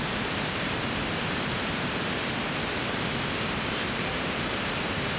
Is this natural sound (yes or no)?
no